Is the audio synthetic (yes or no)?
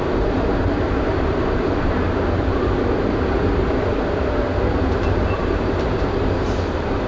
yes